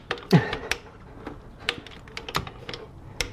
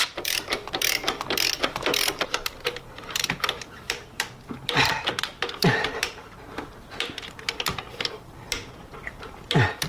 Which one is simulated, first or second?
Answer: second